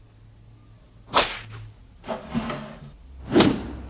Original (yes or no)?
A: yes